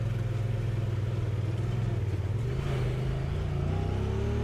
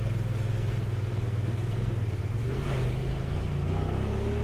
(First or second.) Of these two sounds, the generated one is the second